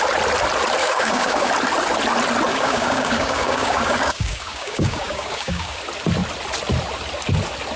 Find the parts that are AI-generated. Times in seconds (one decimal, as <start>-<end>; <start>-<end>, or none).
0.8-1.5; 2.5-5.8